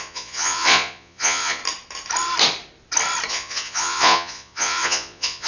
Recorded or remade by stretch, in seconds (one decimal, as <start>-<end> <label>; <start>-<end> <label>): 0.0-1.6 remade; 1.6-3.3 recorded; 3.3-5.5 remade